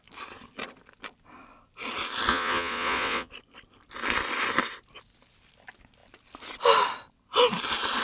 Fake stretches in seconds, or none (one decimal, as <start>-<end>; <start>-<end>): 2.3-3.3